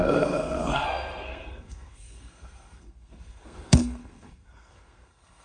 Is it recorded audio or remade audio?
remade